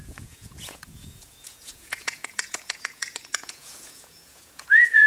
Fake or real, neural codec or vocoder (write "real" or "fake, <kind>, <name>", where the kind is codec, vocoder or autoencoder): fake, vocoder, Vocos